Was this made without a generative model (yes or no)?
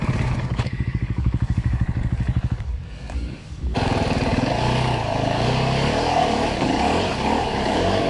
no